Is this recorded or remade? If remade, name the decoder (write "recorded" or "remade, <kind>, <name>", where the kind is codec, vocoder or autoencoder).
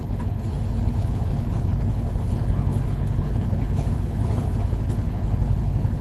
remade, codec, HILCodec